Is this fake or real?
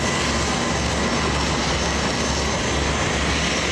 real